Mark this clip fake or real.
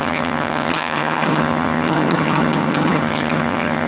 fake